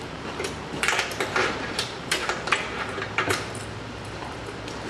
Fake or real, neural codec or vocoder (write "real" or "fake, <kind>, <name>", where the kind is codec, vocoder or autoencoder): fake, vocoder, BigVGAN v2